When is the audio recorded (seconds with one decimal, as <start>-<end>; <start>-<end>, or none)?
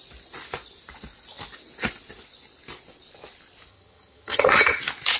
0.0-3.7; 4.8-5.2